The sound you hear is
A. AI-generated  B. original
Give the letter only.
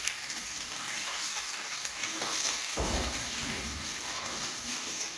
A